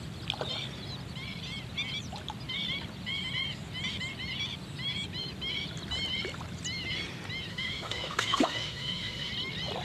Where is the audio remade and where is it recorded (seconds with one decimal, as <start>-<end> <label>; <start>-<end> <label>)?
0.0-7.5 recorded; 7.5-9.3 remade; 9.3-9.8 recorded